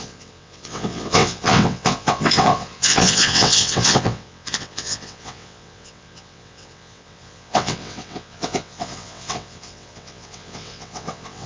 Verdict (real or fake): fake